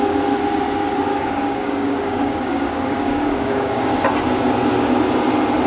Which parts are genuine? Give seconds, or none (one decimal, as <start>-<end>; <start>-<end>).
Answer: 0.0-1.1; 3.8-5.7